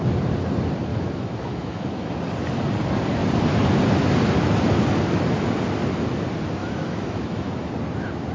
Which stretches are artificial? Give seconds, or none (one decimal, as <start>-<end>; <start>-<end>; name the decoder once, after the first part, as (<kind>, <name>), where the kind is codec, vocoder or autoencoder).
0.9-2.1 (autoencoder, DAC-VAE); 6.6-7.7